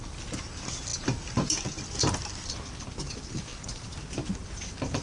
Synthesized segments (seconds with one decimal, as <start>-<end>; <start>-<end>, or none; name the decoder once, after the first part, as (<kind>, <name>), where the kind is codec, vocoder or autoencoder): none